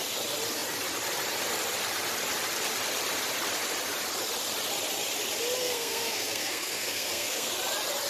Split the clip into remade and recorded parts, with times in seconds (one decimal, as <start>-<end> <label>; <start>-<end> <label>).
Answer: 0.0-5.6 recorded; 5.6-7.5 remade; 7.5-8.1 recorded